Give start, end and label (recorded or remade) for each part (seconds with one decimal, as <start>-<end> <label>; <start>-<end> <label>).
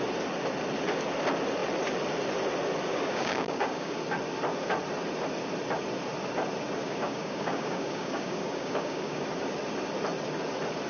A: 0.0-2.9 recorded; 2.9-4.0 remade; 4.0-6.8 recorded; 6.8-9.2 remade; 9.2-10.9 recorded